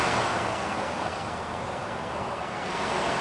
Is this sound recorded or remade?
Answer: remade